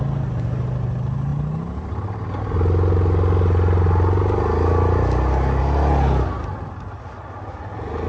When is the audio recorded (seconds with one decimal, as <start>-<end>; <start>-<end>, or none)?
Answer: 0.0-8.1